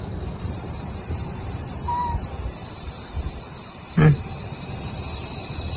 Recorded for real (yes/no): no